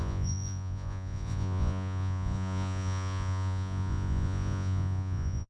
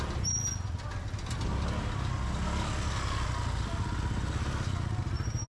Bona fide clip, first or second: second